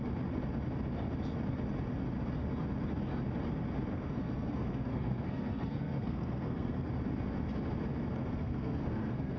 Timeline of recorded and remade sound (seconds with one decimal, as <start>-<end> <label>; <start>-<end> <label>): 0.0-3.9 recorded; 3.9-6.9 remade; 6.9-8.2 recorded; 8.2-9.4 remade